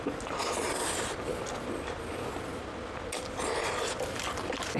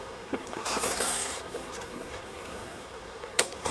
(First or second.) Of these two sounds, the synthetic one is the second